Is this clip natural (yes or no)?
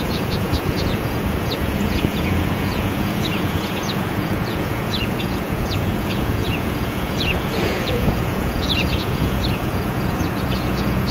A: no